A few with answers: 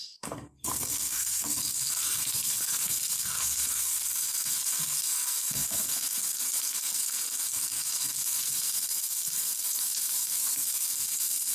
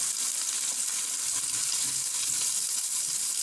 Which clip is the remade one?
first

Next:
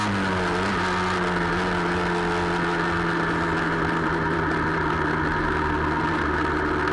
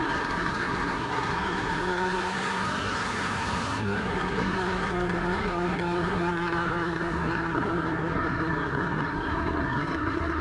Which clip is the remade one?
second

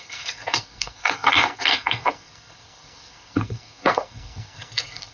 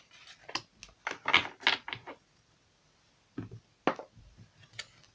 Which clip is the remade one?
first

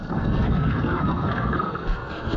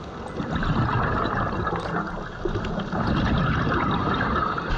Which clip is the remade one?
first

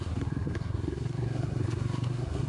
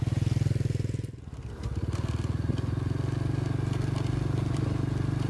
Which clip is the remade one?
first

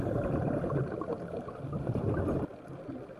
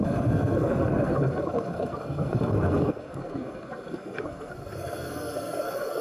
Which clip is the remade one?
second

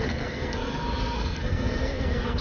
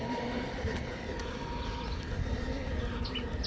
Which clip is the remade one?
first